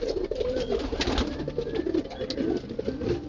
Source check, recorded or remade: recorded